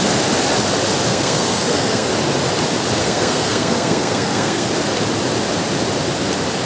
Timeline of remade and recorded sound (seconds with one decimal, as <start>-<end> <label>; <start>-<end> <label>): 0.0-1.1 recorded; 1.1-2.1 remade; 2.1-3.0 recorded; 3.0-4.7 remade; 4.7-6.7 recorded